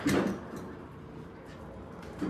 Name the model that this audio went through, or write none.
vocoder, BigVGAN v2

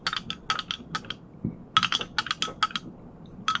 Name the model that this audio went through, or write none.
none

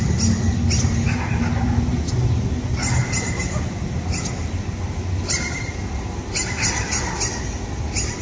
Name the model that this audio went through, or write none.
none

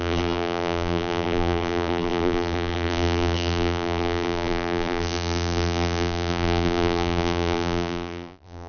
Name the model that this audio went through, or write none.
vocoder, BigVGAN v2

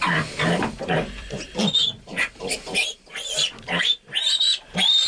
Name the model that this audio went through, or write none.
vocoder, BigVGAN v2